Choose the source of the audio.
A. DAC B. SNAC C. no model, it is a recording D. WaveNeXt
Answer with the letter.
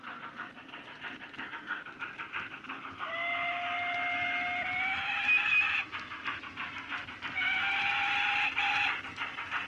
C